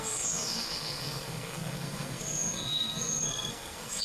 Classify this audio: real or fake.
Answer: fake